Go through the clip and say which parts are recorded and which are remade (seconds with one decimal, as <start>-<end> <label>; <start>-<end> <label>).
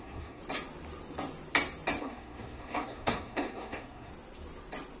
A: 0.0-0.4 remade; 0.4-2.0 recorded; 2.0-4.1 remade; 4.1-5.0 recorded